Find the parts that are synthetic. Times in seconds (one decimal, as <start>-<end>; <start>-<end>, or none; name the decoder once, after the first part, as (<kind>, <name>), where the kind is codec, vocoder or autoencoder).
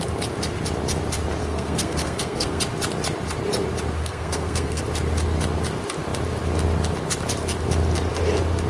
1.4-2.6 (codec, SNAC); 4.0-4.8